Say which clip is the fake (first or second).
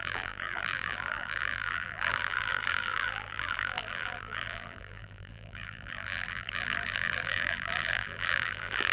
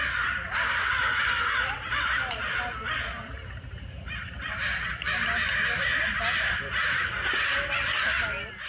first